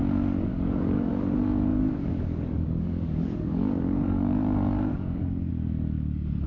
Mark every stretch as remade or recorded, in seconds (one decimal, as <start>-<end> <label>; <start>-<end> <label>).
0.0-0.5 recorded; 0.5-1.1 remade; 1.1-1.7 recorded; 1.7-5.5 remade; 5.5-6.5 recorded